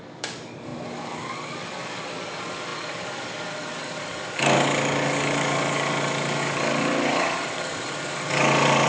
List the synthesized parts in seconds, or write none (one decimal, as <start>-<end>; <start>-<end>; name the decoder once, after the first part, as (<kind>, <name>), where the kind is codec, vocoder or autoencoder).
0.0-8.9 (codec, DAC)